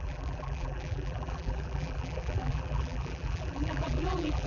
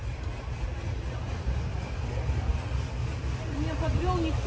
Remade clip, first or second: first